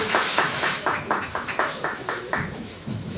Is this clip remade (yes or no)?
yes